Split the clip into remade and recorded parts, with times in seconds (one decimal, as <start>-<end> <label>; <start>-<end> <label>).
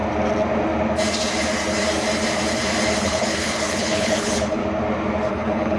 0.0-3.0 recorded; 3.0-4.6 remade; 4.6-5.3 recorded; 5.3-5.8 remade